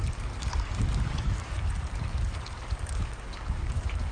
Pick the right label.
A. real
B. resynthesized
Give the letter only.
B